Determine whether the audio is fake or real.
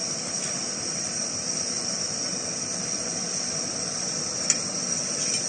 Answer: fake